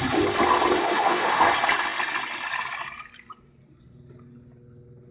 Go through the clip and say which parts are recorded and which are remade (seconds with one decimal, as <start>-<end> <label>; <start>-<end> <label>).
0.0-0.8 recorded; 0.8-1.4 remade; 1.4-5.1 recorded